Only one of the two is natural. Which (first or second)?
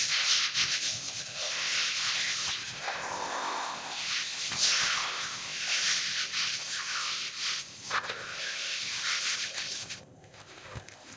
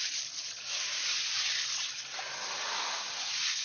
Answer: second